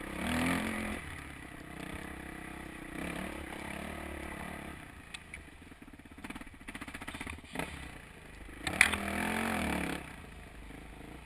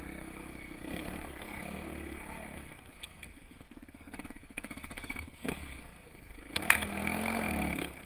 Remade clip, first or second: second